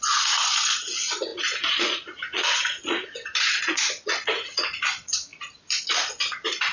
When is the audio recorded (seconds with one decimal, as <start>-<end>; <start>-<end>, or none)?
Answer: 5.3-5.8